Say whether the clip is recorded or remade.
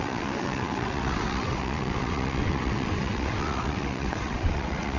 remade